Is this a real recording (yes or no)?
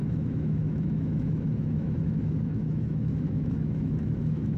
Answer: no